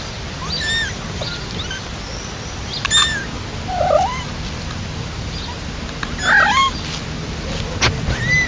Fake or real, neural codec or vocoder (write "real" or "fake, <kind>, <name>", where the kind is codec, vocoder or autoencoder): real